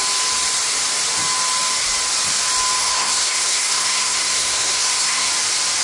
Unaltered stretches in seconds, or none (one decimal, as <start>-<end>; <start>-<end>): 0.0-2.8; 5.3-5.8